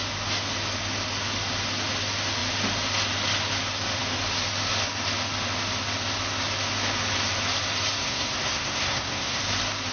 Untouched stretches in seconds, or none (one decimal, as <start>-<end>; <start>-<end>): 0.0-8.0; 9.4-9.9